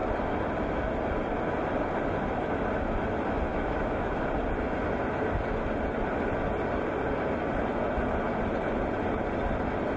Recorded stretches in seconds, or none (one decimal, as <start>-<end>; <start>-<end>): 0.0-3.5; 4.3-10.0